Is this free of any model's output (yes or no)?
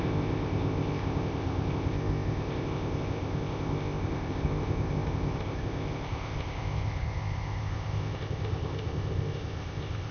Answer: no